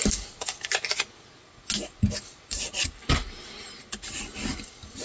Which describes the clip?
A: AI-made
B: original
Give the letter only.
B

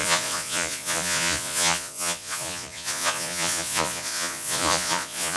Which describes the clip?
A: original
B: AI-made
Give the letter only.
B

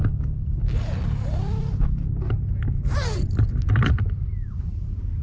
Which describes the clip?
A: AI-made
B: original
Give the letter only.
B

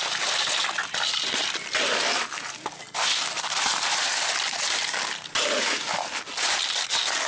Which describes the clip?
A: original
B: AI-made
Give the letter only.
A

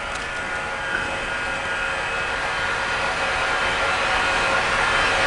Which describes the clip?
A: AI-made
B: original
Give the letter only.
B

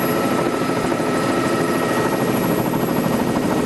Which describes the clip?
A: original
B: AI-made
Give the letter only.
A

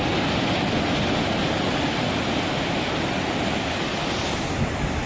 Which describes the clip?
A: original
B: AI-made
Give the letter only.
A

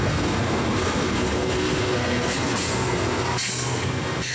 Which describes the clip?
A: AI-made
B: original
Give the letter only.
A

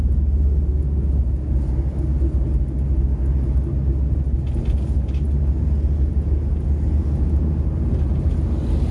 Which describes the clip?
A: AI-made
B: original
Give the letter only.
B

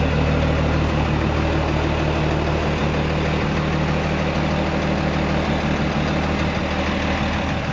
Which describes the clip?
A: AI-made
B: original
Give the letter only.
B